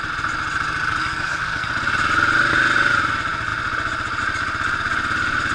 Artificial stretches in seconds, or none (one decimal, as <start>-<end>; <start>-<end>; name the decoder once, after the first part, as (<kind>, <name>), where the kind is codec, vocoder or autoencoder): 1.0-1.7 (codec, SNAC)